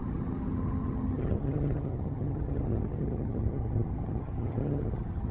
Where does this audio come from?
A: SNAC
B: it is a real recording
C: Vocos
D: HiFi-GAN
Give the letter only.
D